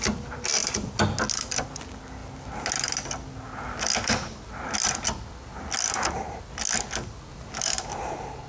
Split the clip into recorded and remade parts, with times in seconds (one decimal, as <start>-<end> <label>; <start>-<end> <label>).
0.0-8.5 recorded